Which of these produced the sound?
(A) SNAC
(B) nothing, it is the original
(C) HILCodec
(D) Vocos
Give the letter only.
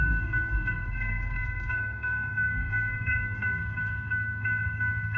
A